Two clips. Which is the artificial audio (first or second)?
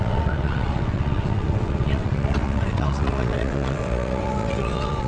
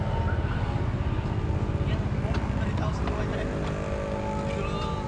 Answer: first